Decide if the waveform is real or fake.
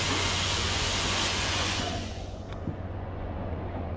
fake